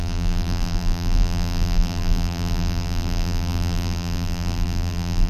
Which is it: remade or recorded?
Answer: remade